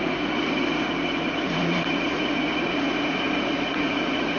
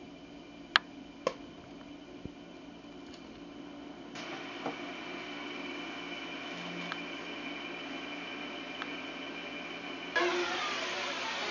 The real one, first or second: second